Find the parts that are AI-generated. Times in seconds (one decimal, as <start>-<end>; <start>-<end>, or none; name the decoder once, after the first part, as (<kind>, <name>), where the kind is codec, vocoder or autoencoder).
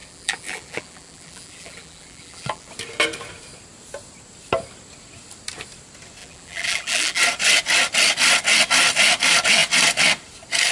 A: 0.0-2.7 (vocoder, BigVGAN v2); 6.2-7.2